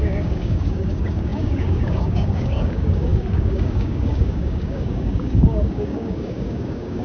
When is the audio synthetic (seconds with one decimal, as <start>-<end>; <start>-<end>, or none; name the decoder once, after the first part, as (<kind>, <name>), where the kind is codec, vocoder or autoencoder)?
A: 0.0-7.0 (codec, DAC)